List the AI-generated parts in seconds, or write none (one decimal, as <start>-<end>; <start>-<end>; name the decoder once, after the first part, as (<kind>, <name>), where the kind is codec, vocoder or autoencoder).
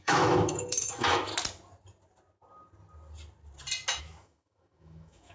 0.0-1.3 (autoencoder, DAC-VAE); 4.0-5.3